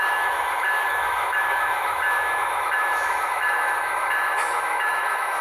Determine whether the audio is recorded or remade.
remade